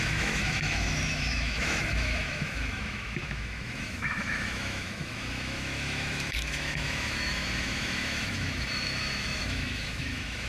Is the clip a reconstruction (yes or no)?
yes